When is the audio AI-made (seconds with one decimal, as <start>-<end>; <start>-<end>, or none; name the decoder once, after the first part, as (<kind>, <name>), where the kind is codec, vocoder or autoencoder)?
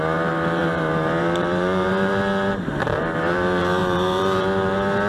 0.0-5.1 (vocoder, BigVGAN v2)